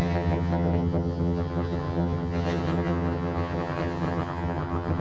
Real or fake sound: fake